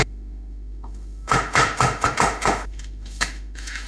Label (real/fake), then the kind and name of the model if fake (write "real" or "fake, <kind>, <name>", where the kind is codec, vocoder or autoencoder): fake, autoencoder, DAC-VAE